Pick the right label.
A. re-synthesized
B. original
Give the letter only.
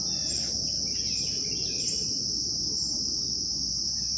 B